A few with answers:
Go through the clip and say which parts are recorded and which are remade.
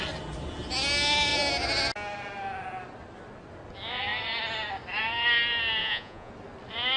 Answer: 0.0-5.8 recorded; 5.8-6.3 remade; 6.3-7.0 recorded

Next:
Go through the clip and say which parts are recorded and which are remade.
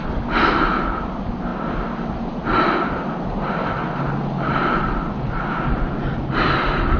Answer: 0.0-7.0 recorded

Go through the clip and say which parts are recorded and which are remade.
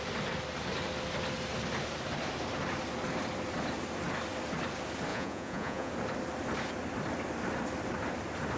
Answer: 0.0-5.1 recorded; 5.1-5.9 remade; 5.9-8.6 recorded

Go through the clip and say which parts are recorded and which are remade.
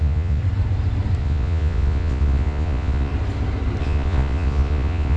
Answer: 0.0-0.4 remade; 0.4-1.2 recorded; 1.2-3.1 remade; 3.1-3.8 recorded; 3.8-5.2 remade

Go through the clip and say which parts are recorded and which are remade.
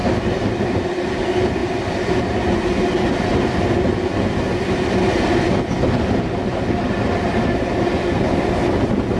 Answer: 0.0-9.2 recorded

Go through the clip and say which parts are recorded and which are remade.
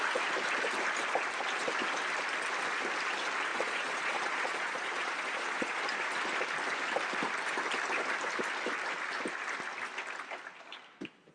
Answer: 0.0-3.5 recorded; 3.5-5.8 remade; 5.8-11.3 recorded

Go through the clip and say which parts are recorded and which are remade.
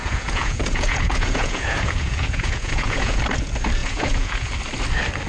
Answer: 0.0-3.2 remade; 3.2-3.8 recorded; 3.8-4.5 remade; 4.5-5.3 recorded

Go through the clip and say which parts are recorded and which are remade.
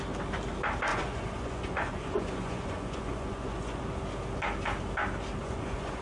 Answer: 0.0-0.9 recorded; 0.9-3.8 remade; 3.8-5.4 recorded; 5.4-6.0 remade